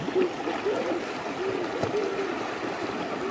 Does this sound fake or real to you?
real